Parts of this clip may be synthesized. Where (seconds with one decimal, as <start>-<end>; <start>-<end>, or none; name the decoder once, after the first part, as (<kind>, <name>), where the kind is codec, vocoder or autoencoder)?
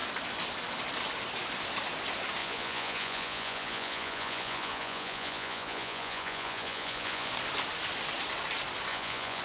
2.4-7.3 (vocoder, Vocos); 8.9-9.4